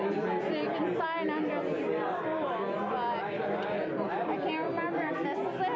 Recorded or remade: recorded